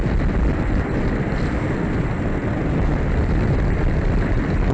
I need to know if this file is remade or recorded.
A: remade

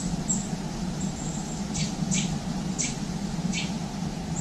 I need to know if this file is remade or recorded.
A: recorded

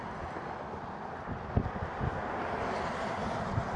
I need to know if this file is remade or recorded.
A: recorded